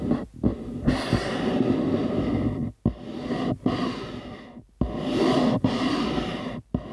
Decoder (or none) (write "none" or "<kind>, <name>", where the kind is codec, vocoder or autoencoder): none